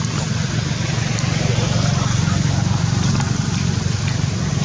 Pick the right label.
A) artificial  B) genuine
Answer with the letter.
B